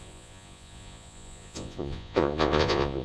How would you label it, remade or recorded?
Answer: remade